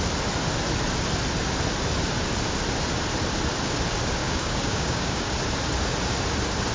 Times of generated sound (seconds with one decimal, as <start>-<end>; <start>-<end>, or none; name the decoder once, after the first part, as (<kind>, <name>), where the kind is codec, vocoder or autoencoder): 4.2-5.3 (codec, DAC)